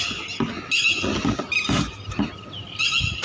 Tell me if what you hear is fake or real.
real